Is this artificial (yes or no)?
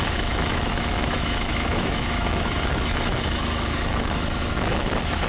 yes